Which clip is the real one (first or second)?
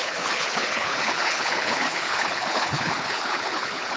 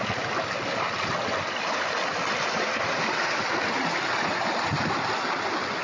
second